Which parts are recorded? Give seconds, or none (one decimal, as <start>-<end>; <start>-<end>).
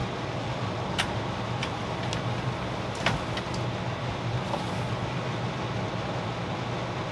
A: 0.0-7.1